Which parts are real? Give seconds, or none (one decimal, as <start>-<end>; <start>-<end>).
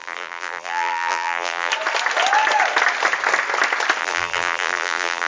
1.7-4.0